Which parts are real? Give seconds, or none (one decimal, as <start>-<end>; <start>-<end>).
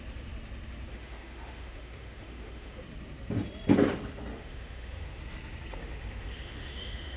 0.0-0.9; 2.8-4.3; 5.2-5.7